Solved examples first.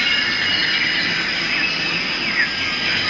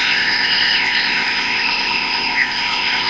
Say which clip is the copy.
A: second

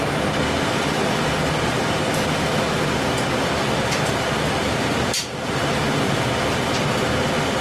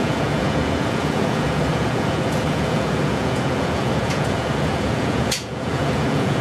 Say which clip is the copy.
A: second